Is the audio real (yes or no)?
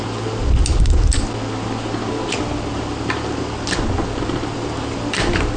yes